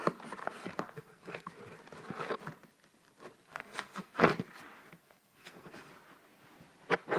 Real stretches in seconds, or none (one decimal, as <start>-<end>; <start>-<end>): 0.0-0.4; 1.5-3.5; 4.2-4.8; 5.9-7.2